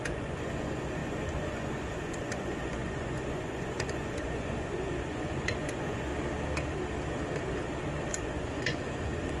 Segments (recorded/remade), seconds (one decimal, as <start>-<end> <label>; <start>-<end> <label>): 0.0-6.1 remade; 6.1-8.1 recorded; 8.1-9.4 remade

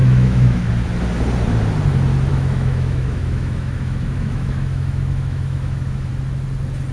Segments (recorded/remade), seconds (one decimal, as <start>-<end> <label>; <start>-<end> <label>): 0.0-0.7 remade; 0.7-2.3 recorded; 2.3-6.1 remade; 6.1-6.9 recorded

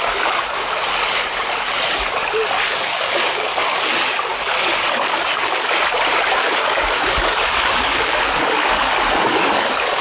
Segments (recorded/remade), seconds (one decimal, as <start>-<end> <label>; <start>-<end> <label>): 0.0-2.7 recorded; 2.7-5.8 remade; 5.8-6.4 recorded; 6.4-10.0 remade

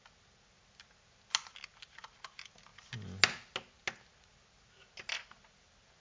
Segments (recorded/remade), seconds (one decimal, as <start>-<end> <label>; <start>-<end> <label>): 0.0-6.0 recorded

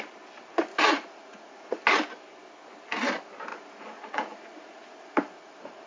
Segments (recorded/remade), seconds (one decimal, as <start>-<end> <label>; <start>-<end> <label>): 0.0-0.7 recorded; 0.7-1.8 remade; 1.8-3.5 recorded; 3.5-5.9 remade